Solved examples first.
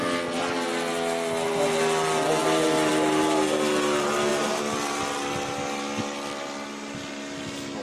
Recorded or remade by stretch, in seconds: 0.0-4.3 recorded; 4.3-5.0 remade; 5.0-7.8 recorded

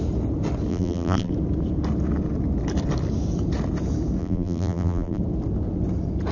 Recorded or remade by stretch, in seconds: 0.0-0.7 recorded; 0.7-1.3 remade; 1.3-4.2 recorded; 4.2-5.2 remade; 5.2-6.3 recorded

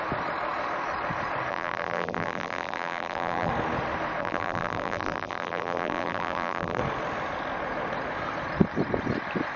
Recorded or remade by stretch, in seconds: 0.0-1.5 recorded; 1.5-3.5 remade; 3.5-4.2 recorded; 4.2-6.8 remade; 6.8-9.6 recorded